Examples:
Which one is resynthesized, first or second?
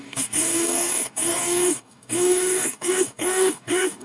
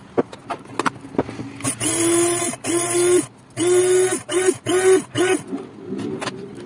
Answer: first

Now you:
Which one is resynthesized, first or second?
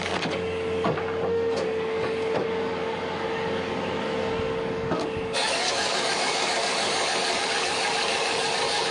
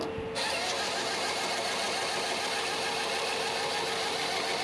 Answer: first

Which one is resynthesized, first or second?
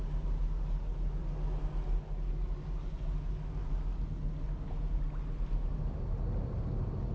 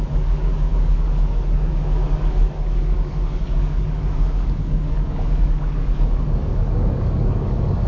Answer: second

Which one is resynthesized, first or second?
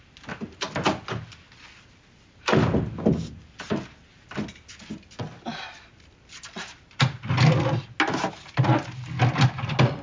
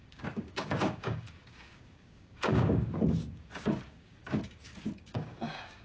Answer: second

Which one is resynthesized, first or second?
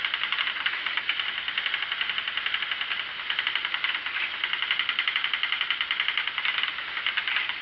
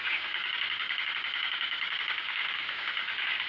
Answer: second